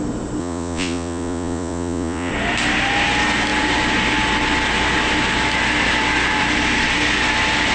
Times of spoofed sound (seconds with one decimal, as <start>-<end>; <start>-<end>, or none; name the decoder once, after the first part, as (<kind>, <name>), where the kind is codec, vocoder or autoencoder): 0.4-2.3 (vocoder, Vocos)